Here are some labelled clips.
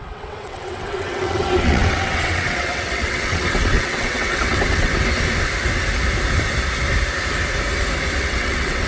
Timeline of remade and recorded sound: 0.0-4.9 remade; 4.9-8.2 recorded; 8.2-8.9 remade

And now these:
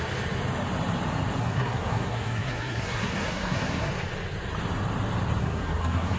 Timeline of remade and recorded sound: 0.0-1.4 recorded; 1.4-3.9 remade; 3.9-5.4 recorded; 5.4-6.2 remade

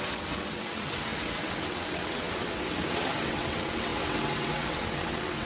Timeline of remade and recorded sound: 0.0-5.4 remade

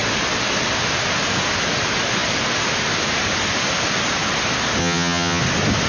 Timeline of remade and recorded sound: 0.0-4.8 recorded; 4.8-5.4 remade; 5.4-5.9 recorded

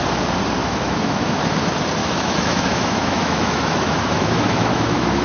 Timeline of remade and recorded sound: 0.0-0.6 recorded; 0.6-1.4 remade; 1.4-2.0 recorded; 2.0-5.2 remade

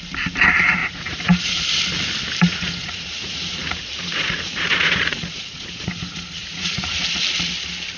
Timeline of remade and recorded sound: 0.0-0.8 recorded; 0.8-1.6 remade; 1.6-2.5 recorded; 2.5-7.0 remade; 7.0-8.0 recorded

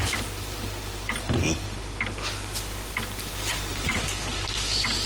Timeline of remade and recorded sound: 0.0-3.7 recorded; 3.7-5.1 remade